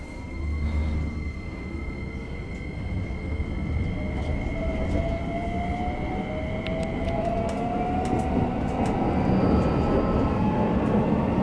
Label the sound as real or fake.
real